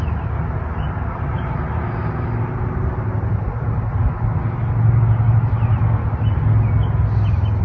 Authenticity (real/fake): real